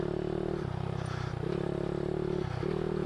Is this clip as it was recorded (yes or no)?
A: yes